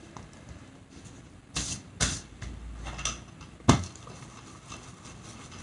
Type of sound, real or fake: real